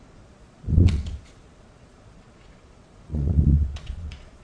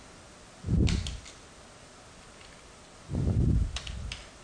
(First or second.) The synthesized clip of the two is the first